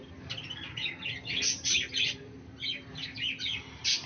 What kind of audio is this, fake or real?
fake